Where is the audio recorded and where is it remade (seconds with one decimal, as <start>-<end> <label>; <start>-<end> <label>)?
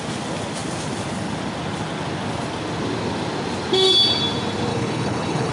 0.0-4.7 recorded; 4.7-5.5 remade